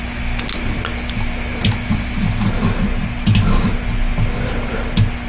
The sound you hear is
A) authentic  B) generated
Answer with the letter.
A